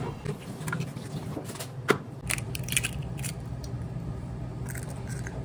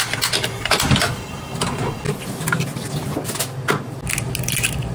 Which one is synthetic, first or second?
first